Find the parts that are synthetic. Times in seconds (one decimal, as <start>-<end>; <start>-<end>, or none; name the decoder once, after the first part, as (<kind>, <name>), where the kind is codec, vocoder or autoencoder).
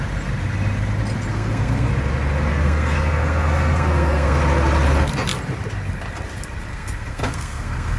1.3-1.9 (codec, SNAC); 2.5-4.4; 6.7-8.0